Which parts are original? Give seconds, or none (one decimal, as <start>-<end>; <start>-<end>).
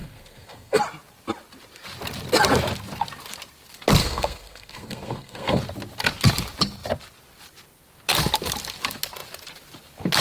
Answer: 0.8-4.0; 5.6-10.2